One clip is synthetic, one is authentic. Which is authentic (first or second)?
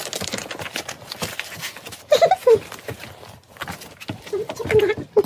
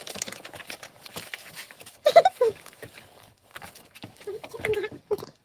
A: first